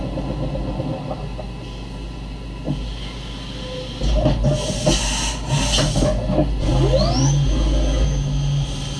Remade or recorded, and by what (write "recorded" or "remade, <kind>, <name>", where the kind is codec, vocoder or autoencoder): recorded